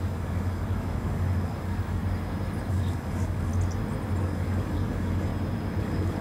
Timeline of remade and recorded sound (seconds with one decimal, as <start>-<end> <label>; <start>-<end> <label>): 0.0-2.0 remade; 2.0-2.7 recorded; 2.7-3.5 remade; 3.5-4.2 recorded; 4.2-5.3 remade; 5.3-5.8 recorded; 5.8-6.2 remade